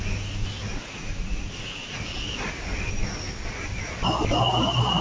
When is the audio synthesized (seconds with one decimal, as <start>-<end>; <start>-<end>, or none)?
0.7-2.0